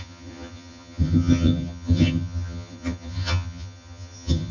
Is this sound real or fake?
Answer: fake